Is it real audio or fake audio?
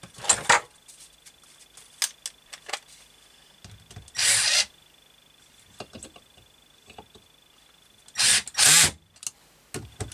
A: real